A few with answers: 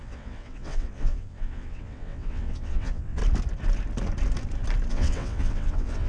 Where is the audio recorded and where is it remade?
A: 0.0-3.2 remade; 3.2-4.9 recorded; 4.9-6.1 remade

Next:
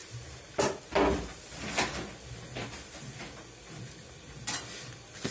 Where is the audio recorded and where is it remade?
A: 0.0-5.3 recorded

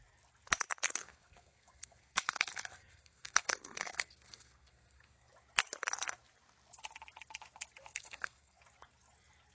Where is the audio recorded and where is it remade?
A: 0.0-1.0 recorded; 1.0-5.3 remade; 5.3-7.9 recorded; 7.9-8.6 remade; 8.6-9.5 recorded

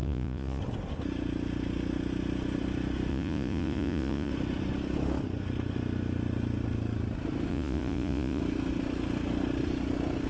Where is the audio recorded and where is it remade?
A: 0.0-0.6 remade; 0.6-3.1 recorded; 3.1-4.3 remade; 4.3-7.5 recorded; 7.5-8.4 remade; 8.4-10.3 recorded

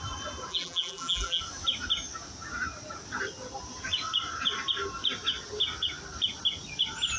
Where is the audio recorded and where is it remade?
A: 0.0-0.5 recorded; 0.5-1.4 remade; 1.4-7.2 recorded

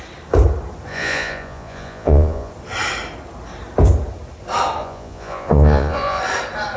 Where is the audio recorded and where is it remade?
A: 0.0-0.9 recorded; 0.9-2.5 remade; 2.5-4.8 recorded; 4.8-6.2 remade; 6.2-6.8 recorded